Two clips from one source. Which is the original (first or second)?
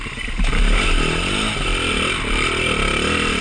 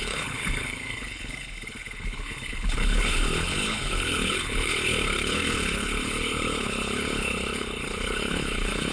first